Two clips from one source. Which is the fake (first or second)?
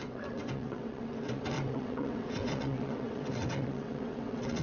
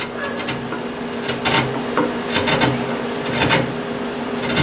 first